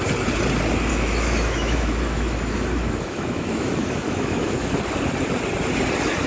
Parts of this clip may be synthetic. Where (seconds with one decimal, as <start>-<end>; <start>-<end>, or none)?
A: 0.9-4.7